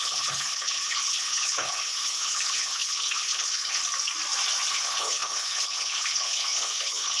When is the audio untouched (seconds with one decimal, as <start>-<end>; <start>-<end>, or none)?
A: 3.8-4.7